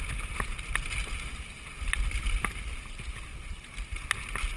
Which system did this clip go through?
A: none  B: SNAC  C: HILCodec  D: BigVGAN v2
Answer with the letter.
A